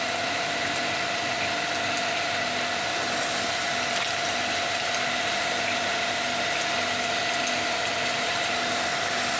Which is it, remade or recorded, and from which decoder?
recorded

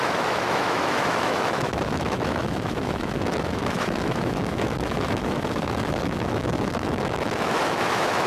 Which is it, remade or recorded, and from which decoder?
remade, autoencoder, DAC-VAE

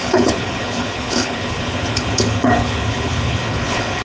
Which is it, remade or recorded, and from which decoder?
remade, codec, HILCodec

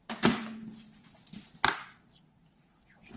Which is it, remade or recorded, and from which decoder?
recorded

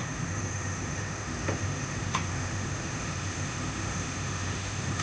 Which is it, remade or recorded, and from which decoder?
remade, autoencoder, DAC-VAE